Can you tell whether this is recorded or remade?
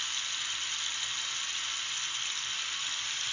recorded